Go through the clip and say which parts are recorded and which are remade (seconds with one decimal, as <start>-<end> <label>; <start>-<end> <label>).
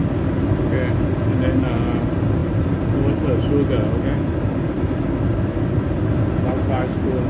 0.0-7.3 recorded